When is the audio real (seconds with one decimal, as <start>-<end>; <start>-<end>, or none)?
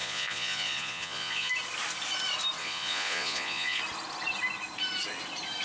1.5-2.6; 3.8-5.6